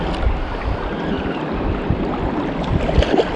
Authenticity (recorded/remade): recorded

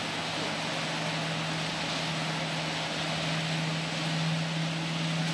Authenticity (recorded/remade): recorded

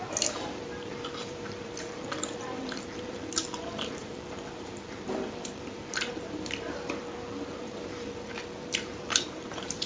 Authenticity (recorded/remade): remade